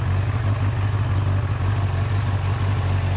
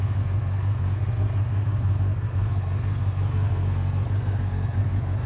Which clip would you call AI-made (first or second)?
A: second